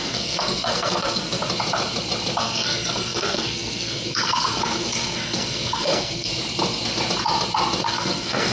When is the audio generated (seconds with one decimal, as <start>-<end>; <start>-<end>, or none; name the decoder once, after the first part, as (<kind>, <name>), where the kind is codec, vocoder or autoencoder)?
0.0-1.4 (codec, SNAC); 2.4-6.3; 7.8-8.5